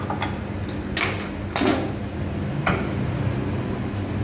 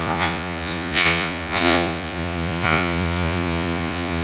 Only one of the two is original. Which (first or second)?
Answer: first